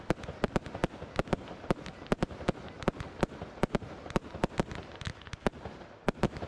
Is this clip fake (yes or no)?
no